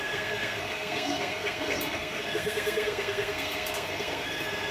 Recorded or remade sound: remade